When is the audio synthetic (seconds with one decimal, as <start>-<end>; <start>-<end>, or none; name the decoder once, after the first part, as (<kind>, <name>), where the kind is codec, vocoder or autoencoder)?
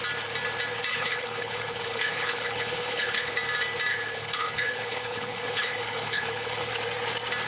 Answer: 0.9-3.3 (codec, HILCodec); 3.9-6.7